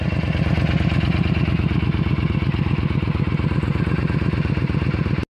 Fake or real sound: real